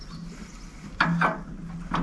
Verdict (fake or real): real